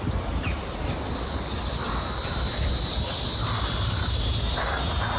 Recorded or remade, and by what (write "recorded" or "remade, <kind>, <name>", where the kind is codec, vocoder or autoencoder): recorded